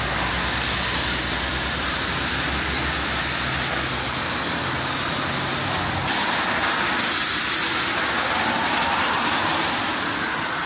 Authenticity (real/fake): real